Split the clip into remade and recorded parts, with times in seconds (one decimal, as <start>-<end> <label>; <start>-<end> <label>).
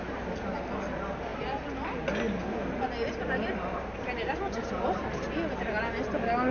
0.0-6.5 recorded